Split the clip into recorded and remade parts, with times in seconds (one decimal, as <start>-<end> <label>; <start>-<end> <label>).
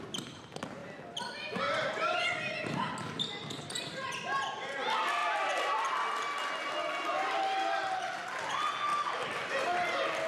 0.0-5.2 recorded; 5.2-5.9 remade; 5.9-8.9 recorded; 8.9-9.5 remade; 9.5-10.3 recorded